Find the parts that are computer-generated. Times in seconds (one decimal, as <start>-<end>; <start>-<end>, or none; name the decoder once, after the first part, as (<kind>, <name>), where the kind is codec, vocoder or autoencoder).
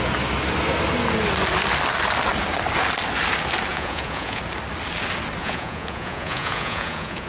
3.7-4.4 (vocoder, Vocos); 5.4-7.3